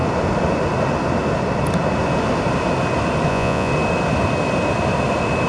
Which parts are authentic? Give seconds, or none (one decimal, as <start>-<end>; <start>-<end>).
0.0-3.3; 3.7-5.5